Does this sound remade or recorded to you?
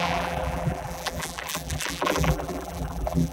remade